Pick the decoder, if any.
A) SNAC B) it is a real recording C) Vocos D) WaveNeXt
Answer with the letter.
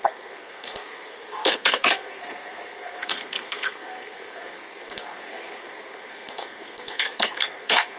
A